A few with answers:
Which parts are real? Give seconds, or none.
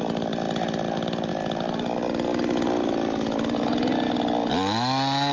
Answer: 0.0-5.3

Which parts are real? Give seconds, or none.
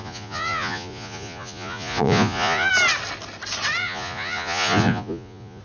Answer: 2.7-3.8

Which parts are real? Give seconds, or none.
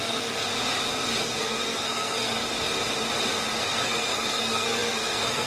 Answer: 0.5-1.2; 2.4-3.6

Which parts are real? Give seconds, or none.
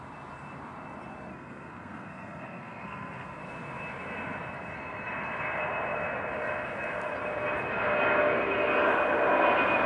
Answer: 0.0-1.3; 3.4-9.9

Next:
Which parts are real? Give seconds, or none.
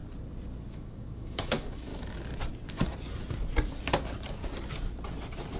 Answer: 0.0-0.7; 1.9-5.6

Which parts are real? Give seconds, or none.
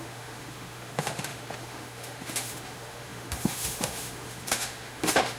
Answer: none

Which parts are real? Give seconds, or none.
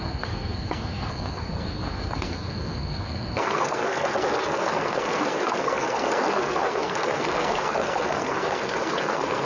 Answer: none